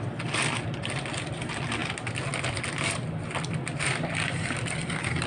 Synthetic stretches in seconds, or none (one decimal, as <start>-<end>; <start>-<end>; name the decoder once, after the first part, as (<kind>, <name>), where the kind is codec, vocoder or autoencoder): none